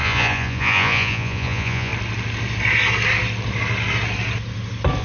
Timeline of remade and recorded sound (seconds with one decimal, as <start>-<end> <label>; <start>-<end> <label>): 0.0-1.9 remade; 1.9-5.0 recorded